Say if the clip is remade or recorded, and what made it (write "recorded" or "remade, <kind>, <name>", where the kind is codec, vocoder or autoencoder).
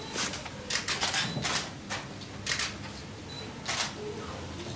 recorded